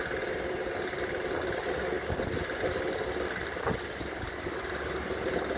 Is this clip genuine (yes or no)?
yes